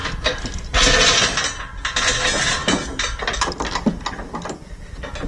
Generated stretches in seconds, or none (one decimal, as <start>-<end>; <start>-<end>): none